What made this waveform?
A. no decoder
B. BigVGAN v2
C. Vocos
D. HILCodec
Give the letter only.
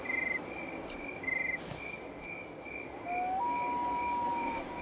A